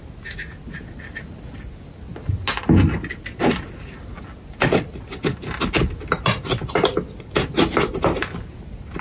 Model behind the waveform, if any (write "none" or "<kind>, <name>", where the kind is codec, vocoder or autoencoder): none